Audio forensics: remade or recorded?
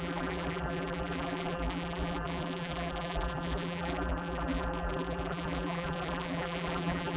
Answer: remade